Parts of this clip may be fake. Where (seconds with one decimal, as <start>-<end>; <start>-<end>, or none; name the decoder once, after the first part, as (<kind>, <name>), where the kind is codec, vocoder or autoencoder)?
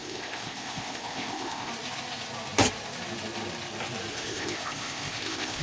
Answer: 0.0-1.7 (codec, ZipCodec); 4.1-5.6